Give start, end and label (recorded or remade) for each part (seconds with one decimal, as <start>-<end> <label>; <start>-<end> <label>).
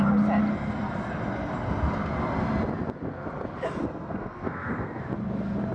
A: 0.0-3.8 recorded; 3.8-5.0 remade; 5.0-5.7 recorded